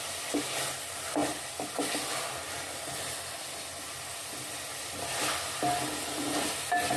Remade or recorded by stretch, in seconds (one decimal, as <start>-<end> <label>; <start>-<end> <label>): 0.0-7.0 recorded